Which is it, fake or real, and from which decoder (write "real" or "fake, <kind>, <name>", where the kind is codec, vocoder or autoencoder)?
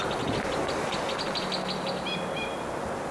real